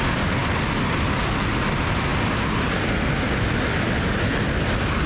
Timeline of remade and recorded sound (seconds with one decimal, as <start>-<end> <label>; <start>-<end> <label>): 0.0-5.1 recorded